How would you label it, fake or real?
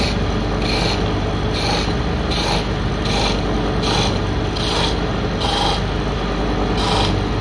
real